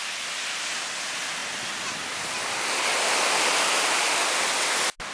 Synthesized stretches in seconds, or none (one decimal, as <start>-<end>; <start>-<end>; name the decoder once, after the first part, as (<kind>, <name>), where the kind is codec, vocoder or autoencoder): none